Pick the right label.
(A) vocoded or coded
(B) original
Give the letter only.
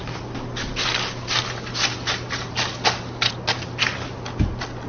B